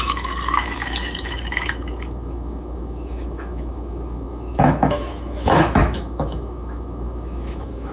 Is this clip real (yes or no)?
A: no